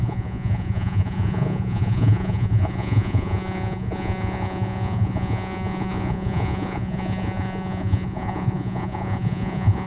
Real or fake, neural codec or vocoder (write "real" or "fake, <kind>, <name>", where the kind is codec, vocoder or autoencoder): fake, vocoder, Vocos